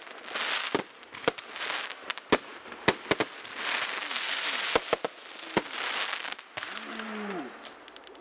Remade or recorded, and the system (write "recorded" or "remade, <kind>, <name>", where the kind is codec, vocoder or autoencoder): recorded